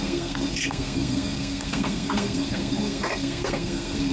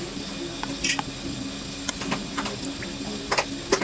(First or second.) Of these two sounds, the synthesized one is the first